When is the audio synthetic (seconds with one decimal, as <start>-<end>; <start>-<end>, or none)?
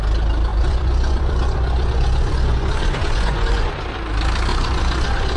0.5-3.7; 4.5-5.4